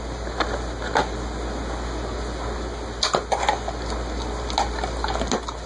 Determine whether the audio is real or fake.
real